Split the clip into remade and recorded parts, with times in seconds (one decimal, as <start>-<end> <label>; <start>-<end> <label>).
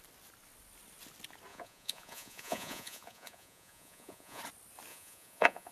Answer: 0.0-1.5 recorded; 1.5-4.4 remade; 4.4-4.9 recorded; 4.9-5.7 remade